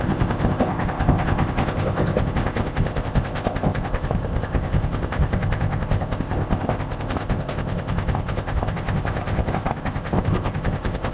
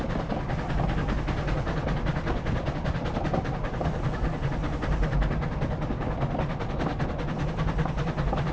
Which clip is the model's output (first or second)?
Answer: first